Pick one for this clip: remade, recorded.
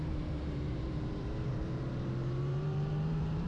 remade